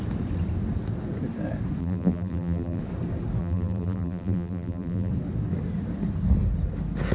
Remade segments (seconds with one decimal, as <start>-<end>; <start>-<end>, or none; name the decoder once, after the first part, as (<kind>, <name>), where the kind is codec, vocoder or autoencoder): 1.8-2.8 (vocoder, BigVGAN v2); 3.4-5.1